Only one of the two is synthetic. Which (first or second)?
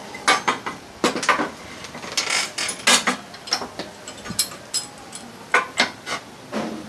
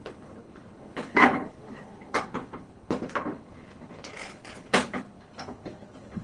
second